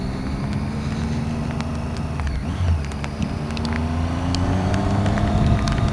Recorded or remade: recorded